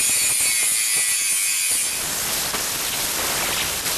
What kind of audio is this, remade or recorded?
recorded